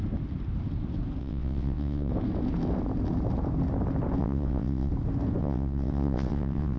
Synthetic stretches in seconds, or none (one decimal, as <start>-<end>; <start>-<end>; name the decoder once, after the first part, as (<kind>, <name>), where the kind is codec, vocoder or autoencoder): 1.2-2.1 (vocoder, WaveNeXt); 4.2-4.9; 5.4-6.8